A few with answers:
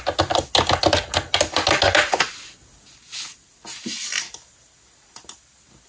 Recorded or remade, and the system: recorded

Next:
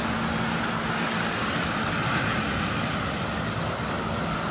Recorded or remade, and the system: recorded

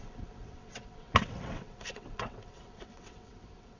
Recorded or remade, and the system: remade, vocoder, WaveNeXt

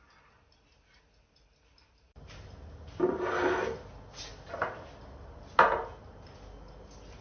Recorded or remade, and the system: recorded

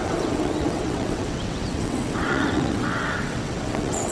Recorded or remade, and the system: remade, vocoder, WaveNeXt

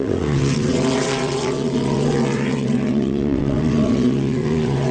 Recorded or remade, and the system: remade, vocoder, WaveNeXt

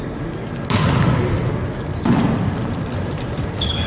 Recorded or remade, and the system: recorded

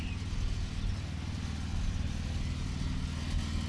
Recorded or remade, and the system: recorded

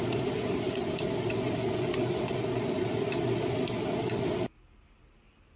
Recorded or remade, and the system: recorded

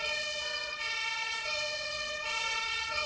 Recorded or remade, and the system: remade, vocoder, WaveNeXt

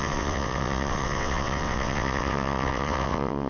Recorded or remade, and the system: remade, vocoder, WaveNeXt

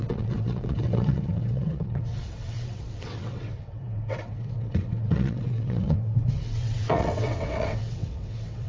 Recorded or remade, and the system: remade, vocoder, WaveNeXt